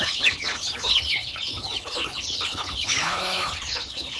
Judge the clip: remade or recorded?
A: remade